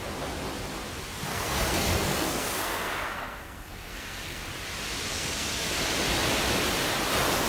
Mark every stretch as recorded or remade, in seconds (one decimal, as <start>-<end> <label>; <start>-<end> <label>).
0.0-1.3 recorded; 1.3-4.4 remade; 4.4-5.1 recorded; 5.1-5.8 remade; 5.8-7.5 recorded